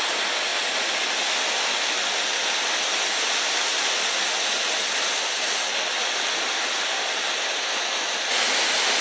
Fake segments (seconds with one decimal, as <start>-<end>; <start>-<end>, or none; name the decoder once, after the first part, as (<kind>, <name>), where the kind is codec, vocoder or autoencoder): none